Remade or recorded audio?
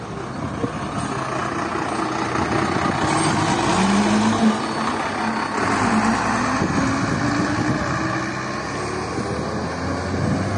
recorded